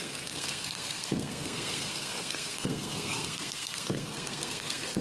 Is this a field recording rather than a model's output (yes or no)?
no